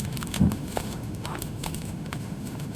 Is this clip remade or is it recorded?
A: remade